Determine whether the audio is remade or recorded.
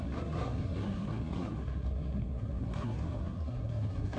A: remade